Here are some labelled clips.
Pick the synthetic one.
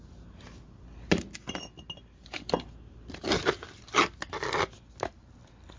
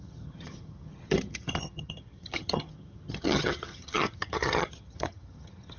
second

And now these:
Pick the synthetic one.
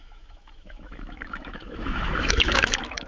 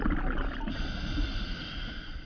first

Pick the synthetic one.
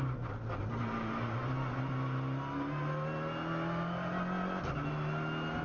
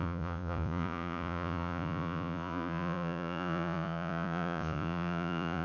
second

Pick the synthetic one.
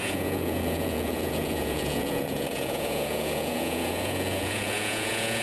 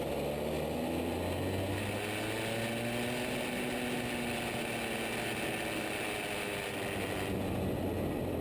first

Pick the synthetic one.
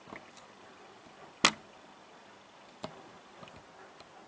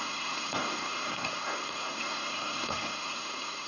second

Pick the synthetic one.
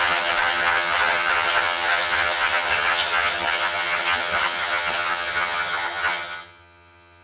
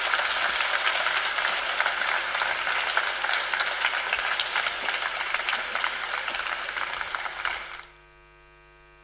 first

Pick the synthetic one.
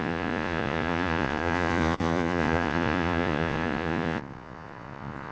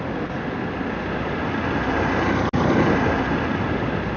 first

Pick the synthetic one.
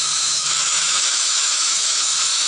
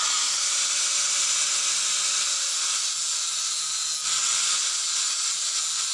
first